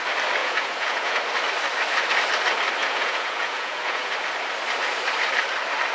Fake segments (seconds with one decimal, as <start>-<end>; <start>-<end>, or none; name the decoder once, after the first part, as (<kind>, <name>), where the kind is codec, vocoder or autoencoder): 0.4-1.2 (vocoder, Vocos); 2.8-4.1